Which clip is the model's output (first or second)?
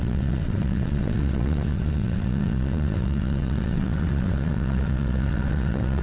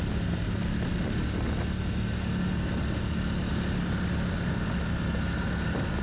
first